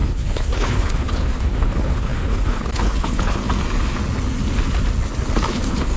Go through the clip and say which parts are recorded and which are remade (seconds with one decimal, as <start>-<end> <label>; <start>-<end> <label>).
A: 0.0-3.4 remade; 3.4-5.5 recorded; 5.5-6.0 remade